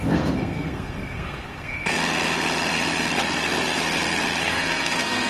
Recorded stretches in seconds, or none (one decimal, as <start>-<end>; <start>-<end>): 2.0-4.4

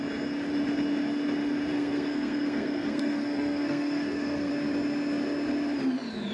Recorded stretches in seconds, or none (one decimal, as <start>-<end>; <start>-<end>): 0.0-1.7; 4.5-6.3